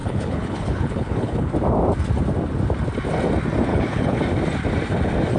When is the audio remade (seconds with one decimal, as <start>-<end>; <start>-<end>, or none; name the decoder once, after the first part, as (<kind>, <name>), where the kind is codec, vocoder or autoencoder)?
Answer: 0.0-1.5 (codec, HILCodec); 3.7-4.2